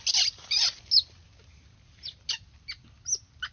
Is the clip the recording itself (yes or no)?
yes